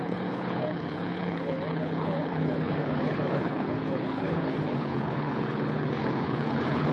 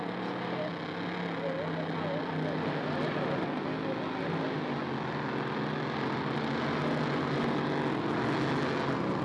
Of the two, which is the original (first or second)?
second